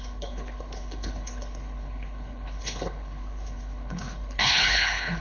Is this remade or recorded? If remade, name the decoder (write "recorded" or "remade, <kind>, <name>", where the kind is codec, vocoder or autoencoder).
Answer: remade, codec, HILCodec